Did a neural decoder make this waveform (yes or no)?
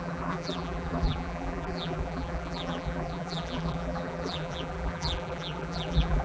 yes